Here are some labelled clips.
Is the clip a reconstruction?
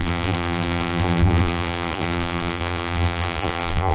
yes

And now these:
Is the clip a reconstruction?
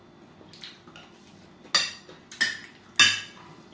no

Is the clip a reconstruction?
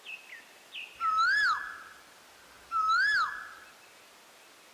no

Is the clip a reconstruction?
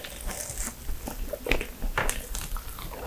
no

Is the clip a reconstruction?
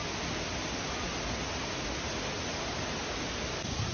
no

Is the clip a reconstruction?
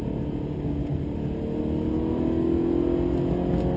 no